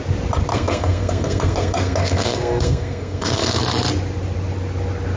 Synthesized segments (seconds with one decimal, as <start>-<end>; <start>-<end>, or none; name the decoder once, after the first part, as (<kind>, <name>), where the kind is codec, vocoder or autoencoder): 0.5-3.6 (codec, SNAC)